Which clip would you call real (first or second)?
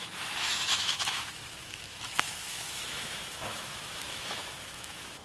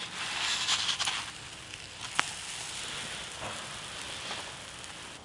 second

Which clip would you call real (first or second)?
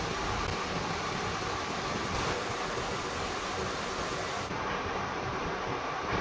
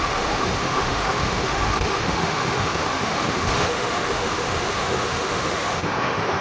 first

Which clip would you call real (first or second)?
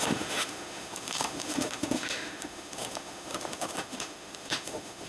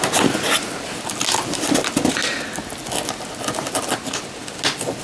second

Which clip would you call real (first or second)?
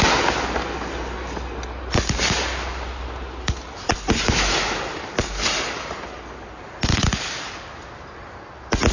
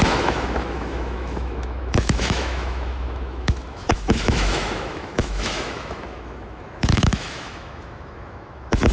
first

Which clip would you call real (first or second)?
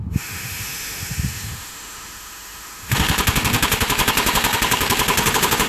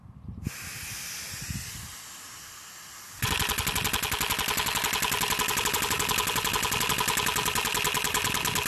second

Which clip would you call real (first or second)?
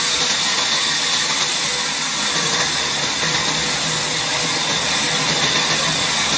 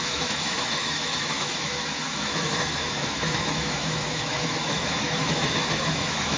first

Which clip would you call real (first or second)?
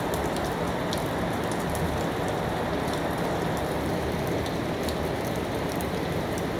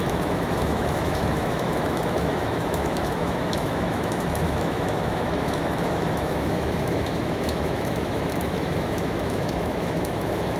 first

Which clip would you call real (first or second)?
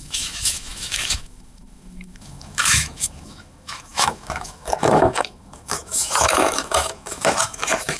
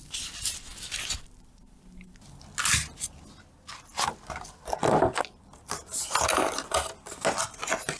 second